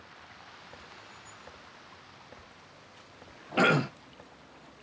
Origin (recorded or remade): recorded